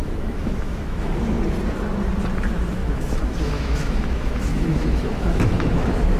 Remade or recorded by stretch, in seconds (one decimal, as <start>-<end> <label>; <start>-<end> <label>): 0.0-1.1 remade; 1.1-2.8 recorded; 2.8-6.2 remade